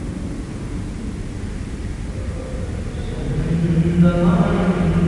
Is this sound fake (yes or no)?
no